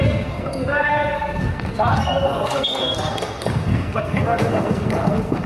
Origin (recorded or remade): remade